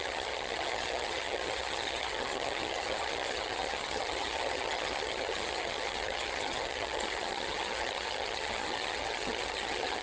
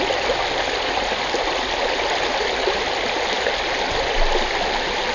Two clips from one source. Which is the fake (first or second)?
first